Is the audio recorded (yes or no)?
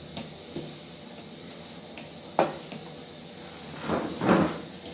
yes